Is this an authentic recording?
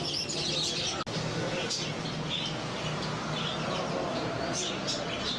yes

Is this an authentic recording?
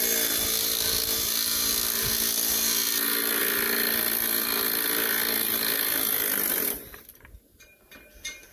yes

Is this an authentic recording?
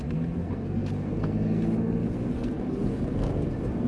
no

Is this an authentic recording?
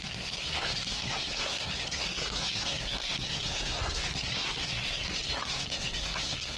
no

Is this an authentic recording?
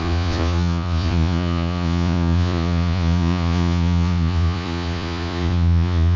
no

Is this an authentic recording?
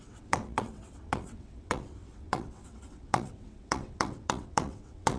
no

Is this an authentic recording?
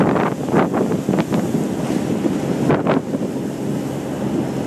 yes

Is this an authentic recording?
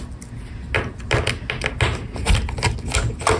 yes